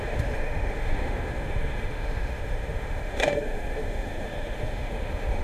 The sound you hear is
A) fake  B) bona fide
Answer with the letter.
A